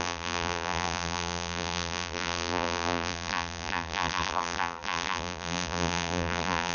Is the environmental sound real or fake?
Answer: fake